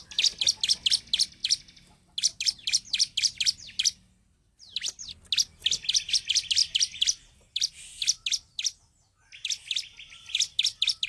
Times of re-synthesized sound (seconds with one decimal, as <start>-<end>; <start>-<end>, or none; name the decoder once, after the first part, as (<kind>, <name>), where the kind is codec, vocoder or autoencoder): none

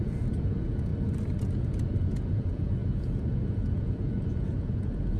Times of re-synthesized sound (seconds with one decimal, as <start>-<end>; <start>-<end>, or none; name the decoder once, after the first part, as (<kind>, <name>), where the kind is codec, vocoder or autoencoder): 0.0-0.9 (vocoder, Vocos); 1.4-5.2

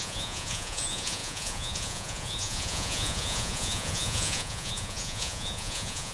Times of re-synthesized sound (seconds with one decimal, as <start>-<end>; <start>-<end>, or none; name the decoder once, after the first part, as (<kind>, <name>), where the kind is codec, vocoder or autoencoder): 0.0-6.1 (vocoder, Vocos)

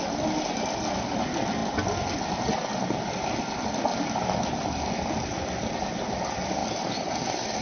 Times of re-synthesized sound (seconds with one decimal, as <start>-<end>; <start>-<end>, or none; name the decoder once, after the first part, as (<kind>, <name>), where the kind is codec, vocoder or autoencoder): none

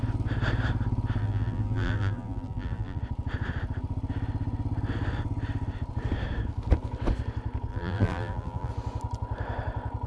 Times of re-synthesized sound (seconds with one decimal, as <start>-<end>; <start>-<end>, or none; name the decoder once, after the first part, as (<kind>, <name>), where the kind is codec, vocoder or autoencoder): 1.2-3.0 (vocoder, BigVGAN v2); 7.7-8.7

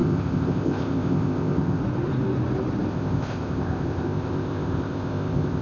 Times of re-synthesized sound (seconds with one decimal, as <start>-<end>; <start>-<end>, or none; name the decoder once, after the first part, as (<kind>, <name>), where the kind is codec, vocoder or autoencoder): 0.0-1.8 (codec, ZipCodec); 2.9-5.6

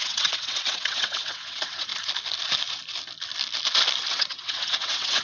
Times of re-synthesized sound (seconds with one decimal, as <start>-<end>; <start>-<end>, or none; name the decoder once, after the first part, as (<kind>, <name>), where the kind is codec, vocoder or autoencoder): 0.0-1.9 (vocoder, WaveNeXt); 4.1-5.2

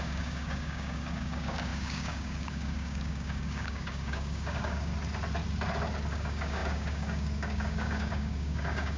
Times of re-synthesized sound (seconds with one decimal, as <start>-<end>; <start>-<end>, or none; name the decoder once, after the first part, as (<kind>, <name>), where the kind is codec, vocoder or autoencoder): 0.0-4.9 (codec, DAC); 6.1-9.0